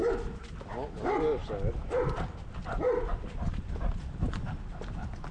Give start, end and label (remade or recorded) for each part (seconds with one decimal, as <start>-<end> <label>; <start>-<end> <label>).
0.0-5.3 recorded